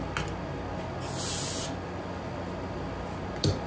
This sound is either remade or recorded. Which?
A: recorded